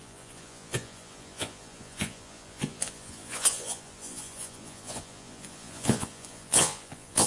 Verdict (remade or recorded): remade